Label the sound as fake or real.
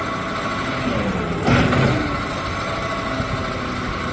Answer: real